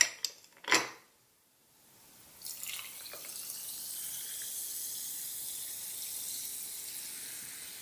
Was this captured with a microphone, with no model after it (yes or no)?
yes